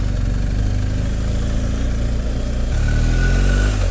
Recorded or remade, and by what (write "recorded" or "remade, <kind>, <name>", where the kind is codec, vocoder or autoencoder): recorded